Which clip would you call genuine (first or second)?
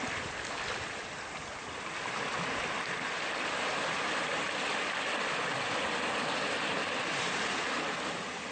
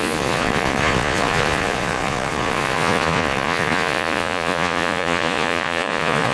first